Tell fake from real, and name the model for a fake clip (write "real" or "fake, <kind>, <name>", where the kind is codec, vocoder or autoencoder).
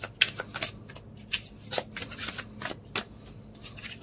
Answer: real